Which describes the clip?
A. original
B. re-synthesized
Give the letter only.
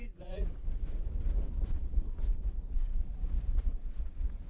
B